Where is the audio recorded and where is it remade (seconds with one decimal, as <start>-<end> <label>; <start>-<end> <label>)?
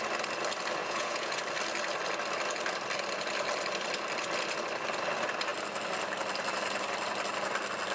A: 0.0-0.8 recorded; 0.8-1.4 remade; 1.4-7.9 recorded